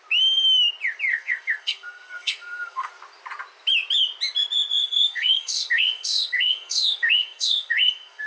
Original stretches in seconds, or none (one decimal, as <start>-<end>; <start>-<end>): 0.0-1.1; 2.9-4.8